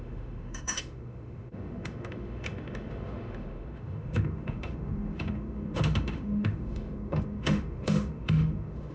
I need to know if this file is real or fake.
fake